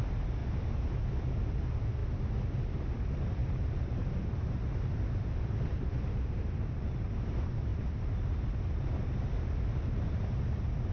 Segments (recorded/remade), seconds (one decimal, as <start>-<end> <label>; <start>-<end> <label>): 0.0-0.4 recorded; 0.4-0.9 remade; 0.9-3.4 recorded; 3.4-4.7 remade; 4.7-10.9 recorded